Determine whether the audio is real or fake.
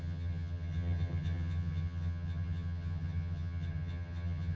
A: fake